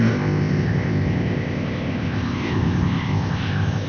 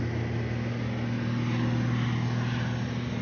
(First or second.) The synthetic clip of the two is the first